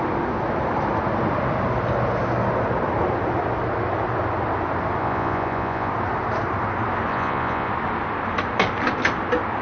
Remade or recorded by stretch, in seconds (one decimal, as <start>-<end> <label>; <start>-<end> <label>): 0.0-5.0 recorded; 5.0-5.9 remade; 5.9-7.1 recorded; 7.1-7.7 remade; 7.7-9.6 recorded